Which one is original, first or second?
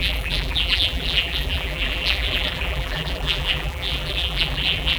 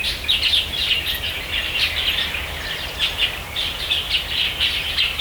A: second